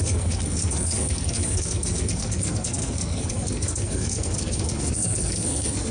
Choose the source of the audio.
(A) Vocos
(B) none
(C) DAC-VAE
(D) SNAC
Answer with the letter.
D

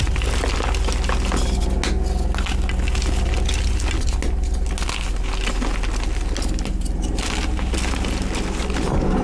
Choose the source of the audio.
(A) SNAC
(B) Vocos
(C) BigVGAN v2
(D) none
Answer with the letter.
D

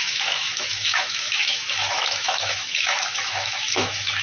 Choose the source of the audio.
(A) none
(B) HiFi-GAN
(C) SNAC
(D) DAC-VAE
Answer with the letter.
D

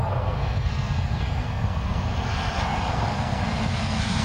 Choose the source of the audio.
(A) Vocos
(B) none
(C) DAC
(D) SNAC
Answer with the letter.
D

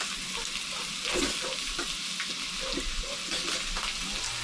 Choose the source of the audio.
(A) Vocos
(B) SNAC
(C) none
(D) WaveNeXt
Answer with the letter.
C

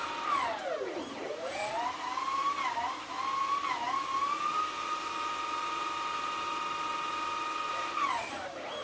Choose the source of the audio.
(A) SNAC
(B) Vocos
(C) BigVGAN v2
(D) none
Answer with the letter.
D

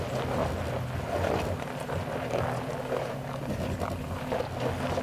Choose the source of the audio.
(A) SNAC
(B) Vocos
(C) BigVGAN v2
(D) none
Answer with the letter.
D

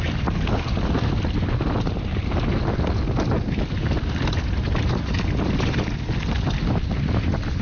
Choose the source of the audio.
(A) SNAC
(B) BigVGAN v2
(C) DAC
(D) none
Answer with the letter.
D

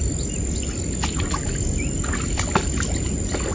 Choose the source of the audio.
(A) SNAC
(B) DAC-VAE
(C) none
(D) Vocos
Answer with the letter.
C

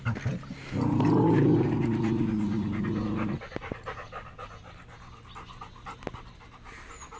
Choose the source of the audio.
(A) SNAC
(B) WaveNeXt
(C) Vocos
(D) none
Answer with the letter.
D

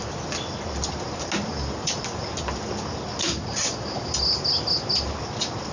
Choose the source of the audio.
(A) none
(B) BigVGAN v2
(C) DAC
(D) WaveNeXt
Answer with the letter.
A